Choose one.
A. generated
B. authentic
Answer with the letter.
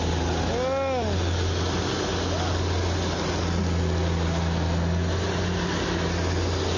B